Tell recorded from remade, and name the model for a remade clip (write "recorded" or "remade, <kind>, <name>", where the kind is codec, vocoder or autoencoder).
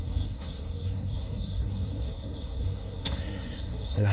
remade, codec, SNAC